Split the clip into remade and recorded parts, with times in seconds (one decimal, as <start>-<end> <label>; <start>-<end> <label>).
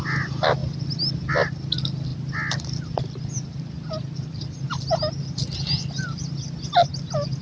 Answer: 0.0-7.4 recorded